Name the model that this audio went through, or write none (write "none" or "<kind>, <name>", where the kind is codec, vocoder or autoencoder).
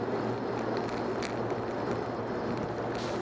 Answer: none